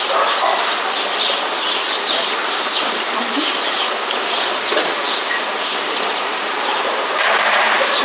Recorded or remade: remade